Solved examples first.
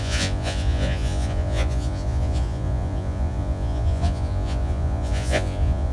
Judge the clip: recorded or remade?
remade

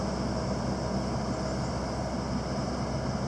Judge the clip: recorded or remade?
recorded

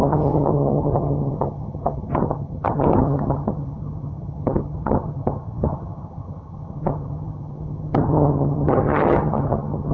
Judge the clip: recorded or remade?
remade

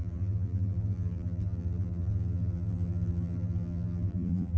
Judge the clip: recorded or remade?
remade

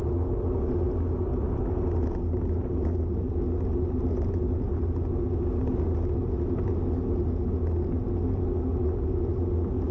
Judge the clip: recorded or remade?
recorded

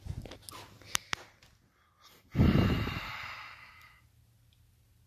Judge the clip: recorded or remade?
recorded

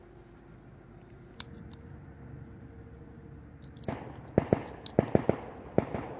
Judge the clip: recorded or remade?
recorded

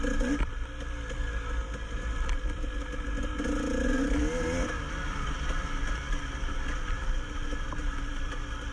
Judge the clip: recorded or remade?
recorded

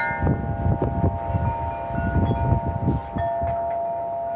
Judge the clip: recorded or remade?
recorded